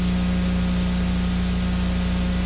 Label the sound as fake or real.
real